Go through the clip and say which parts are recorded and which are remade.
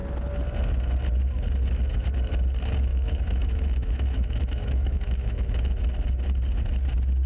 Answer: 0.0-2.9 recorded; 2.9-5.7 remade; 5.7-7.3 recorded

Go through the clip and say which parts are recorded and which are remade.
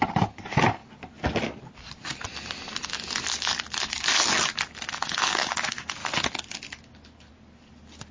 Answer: 0.0-8.1 recorded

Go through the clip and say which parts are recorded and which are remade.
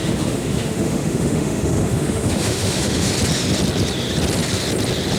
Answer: 0.0-3.1 remade; 3.1-5.2 recorded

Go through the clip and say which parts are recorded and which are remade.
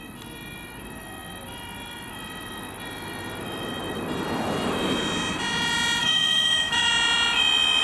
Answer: 0.0-6.0 recorded; 6.0-6.9 remade; 6.9-7.8 recorded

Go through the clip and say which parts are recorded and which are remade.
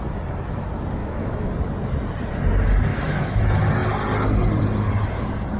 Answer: 0.0-1.0 recorded; 1.0-1.5 remade; 1.5-2.9 recorded; 2.9-3.4 remade; 3.4-5.6 recorded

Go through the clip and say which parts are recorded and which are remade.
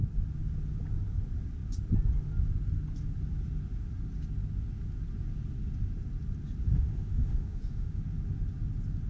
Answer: 0.0-6.6 recorded; 6.6-8.0 remade; 8.0-9.1 recorded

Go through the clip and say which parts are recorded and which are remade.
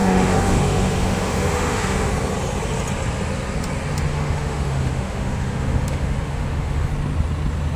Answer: 0.0-2.1 remade; 2.1-4.1 recorded; 4.1-6.9 remade; 6.9-7.8 recorded